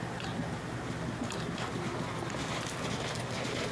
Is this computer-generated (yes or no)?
no